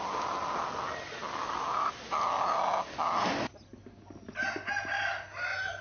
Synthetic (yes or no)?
no